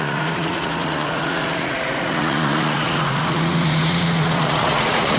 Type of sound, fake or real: fake